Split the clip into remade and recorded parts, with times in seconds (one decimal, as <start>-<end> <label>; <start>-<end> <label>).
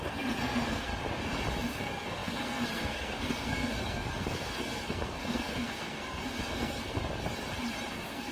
0.0-0.9 remade; 0.9-1.7 recorded; 1.7-7.0 remade; 7.0-7.9 recorded; 7.9-8.3 remade